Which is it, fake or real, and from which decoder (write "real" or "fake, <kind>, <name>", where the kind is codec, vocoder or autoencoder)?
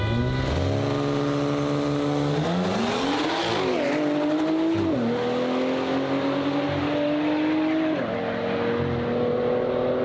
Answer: real